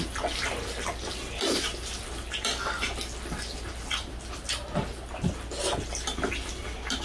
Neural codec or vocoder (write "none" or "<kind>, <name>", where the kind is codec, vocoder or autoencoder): none